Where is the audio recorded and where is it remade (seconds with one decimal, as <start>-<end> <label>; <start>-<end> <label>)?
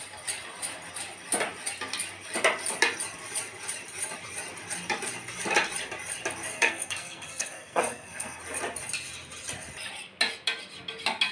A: 0.0-6.5 recorded; 6.5-8.4 remade; 8.4-11.3 recorded